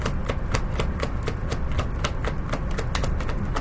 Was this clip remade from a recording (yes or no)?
no